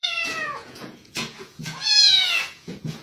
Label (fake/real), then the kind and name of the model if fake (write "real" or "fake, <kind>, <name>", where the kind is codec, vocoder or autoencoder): fake, vocoder, Vocos